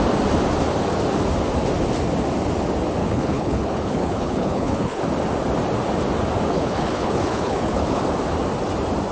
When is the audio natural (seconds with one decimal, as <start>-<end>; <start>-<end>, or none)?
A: 0.0-3.0; 5.0-6.5; 8.0-9.1